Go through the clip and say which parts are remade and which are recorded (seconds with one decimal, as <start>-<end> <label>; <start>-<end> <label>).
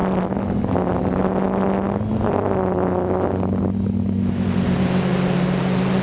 0.0-6.0 recorded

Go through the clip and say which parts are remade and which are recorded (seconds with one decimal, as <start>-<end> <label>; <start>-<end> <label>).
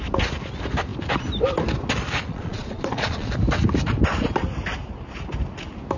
0.0-2.3 recorded; 2.3-3.3 remade; 3.3-6.0 recorded